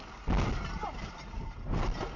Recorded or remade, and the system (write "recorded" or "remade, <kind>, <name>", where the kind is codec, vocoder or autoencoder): recorded